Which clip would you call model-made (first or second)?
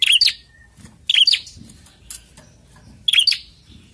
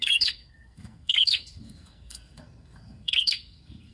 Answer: second